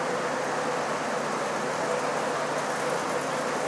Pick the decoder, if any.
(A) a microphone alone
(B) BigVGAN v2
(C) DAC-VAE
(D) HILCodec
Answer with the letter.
A